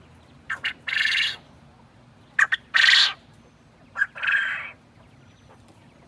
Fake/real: real